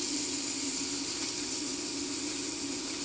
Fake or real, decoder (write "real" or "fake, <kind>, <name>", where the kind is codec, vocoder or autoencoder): real